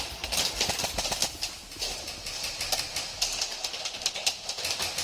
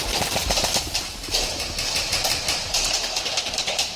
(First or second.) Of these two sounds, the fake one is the second